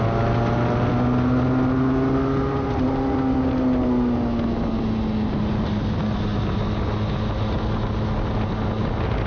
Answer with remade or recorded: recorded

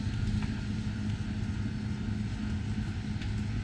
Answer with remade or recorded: recorded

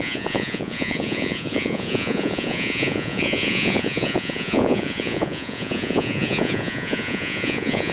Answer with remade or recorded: remade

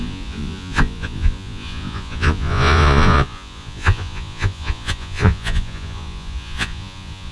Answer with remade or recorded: remade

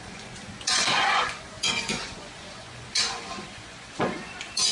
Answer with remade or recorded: remade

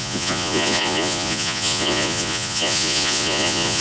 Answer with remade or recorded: remade